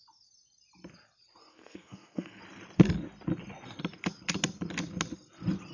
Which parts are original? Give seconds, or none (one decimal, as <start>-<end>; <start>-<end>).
0.0-1.5; 2.4-5.7